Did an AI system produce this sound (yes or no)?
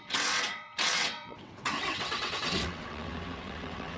yes